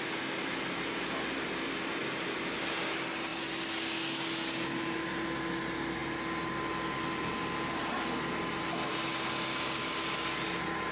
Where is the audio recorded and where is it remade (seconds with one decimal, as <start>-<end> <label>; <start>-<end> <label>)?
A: 0.0-10.9 recorded